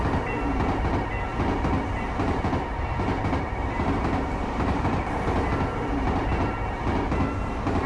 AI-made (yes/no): no